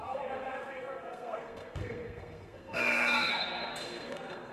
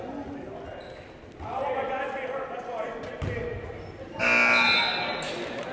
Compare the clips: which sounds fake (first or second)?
first